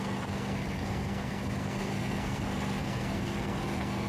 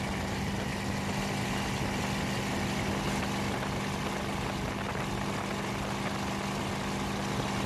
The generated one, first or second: first